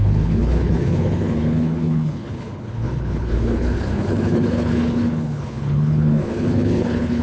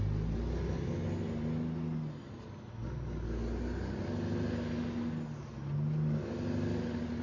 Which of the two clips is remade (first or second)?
first